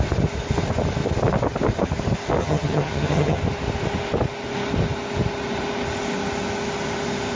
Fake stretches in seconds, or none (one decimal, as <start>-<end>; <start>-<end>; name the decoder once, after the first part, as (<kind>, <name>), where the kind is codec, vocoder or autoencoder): 2.4-3.4 (vocoder, HiFi-GAN)